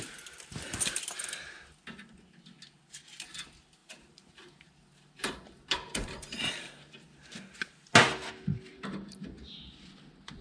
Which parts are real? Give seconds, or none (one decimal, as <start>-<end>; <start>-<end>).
0.0-3.8; 6.7-8.7; 9.5-10.4